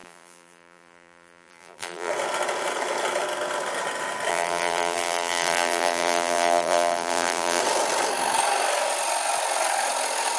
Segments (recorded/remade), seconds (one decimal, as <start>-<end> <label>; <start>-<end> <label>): 0.0-2.1 remade; 2.1-4.3 recorded; 4.3-7.6 remade; 7.6-10.4 recorded